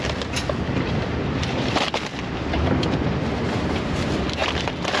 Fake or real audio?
real